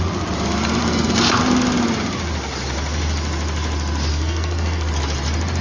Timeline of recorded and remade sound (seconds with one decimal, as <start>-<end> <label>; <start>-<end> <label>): 0.0-0.8 recorded; 0.8-1.4 remade; 1.4-4.1 recorded; 4.1-4.9 remade; 4.9-5.6 recorded